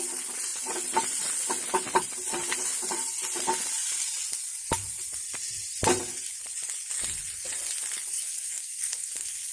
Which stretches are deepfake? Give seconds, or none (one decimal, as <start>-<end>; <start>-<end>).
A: 8.2-9.5